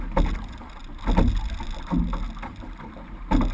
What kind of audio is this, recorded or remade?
recorded